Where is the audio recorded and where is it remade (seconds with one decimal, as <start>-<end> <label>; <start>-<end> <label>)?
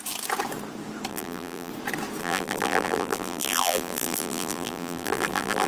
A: 0.0-1.1 recorded; 1.1-1.7 remade; 1.7-2.2 recorded; 2.2-5.7 remade